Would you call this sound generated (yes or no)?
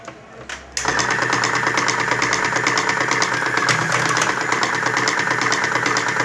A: no